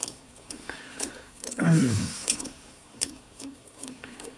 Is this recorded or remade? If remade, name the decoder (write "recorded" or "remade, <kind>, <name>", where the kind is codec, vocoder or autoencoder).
remade, codec, SNAC